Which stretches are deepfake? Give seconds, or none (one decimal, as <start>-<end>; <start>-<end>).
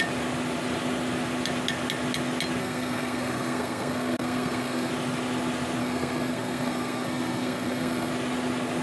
2.6-4.9; 5.8-8.1